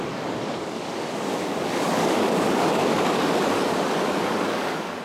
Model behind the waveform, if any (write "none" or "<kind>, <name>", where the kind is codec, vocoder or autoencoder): codec, DAC